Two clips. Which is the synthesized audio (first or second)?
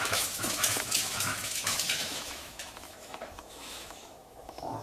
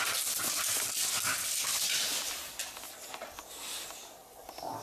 first